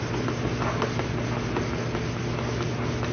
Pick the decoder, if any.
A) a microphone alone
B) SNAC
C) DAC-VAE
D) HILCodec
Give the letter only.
A